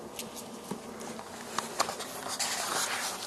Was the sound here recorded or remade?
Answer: recorded